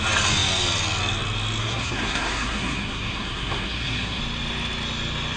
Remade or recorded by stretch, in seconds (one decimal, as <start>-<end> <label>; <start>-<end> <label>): 0.0-1.6 recorded; 1.6-4.2 remade; 4.2-5.4 recorded